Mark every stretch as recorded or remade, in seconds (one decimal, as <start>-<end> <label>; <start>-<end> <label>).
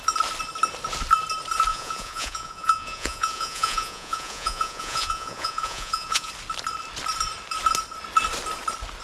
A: 0.0-1.7 recorded; 1.7-6.3 remade; 6.3-9.0 recorded